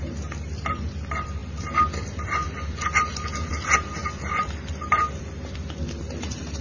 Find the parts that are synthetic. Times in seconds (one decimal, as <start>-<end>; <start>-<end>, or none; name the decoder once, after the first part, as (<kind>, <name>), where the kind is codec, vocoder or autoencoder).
0.0-6.6 (vocoder, BigVGAN v2)